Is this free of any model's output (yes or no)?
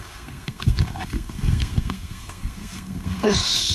no